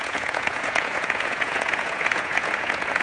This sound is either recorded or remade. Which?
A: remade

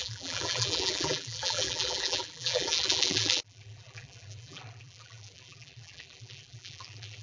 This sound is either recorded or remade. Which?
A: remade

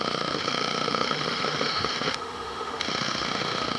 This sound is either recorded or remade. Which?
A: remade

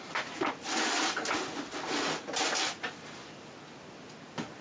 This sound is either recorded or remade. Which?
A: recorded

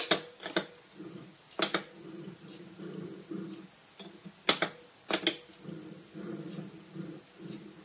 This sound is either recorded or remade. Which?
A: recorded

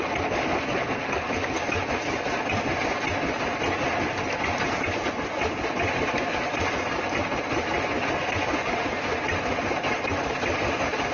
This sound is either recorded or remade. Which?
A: recorded